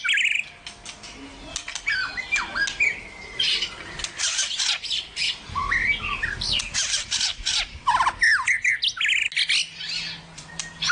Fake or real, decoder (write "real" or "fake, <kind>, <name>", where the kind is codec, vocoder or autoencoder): real